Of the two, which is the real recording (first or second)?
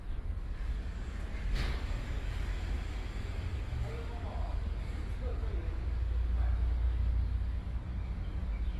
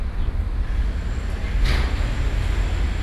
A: second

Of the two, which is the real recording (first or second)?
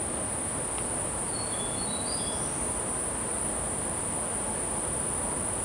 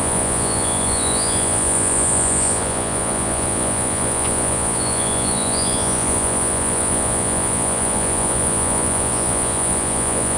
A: first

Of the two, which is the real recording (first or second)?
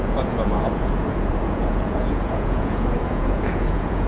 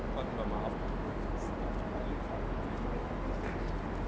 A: second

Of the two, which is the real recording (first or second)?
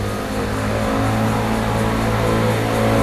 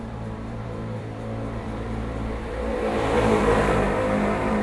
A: first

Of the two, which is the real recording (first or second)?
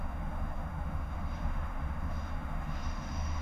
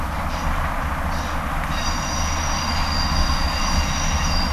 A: second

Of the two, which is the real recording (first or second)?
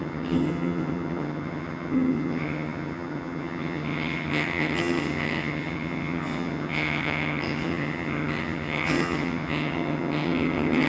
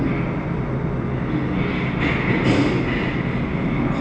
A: second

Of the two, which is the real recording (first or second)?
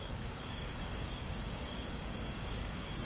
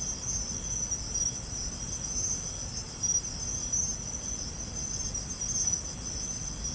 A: second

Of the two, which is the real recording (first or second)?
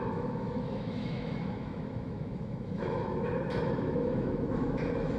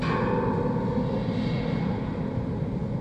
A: second